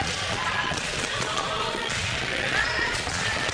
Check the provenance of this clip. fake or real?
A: fake